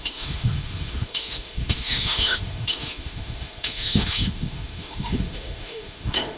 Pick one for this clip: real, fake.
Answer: fake